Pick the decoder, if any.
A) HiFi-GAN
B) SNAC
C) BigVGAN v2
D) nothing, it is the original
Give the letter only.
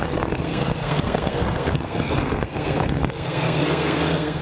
B